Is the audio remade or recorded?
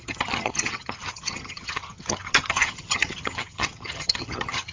remade